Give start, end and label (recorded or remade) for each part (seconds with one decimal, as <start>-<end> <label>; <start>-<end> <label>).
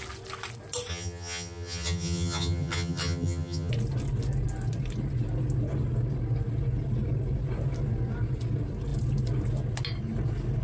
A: 0.0-0.9 recorded; 0.9-3.7 remade; 3.7-10.6 recorded